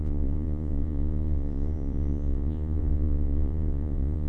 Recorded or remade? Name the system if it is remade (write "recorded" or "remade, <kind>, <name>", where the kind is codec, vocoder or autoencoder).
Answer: remade, vocoder, Vocos